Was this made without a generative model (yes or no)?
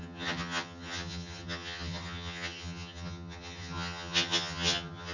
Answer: no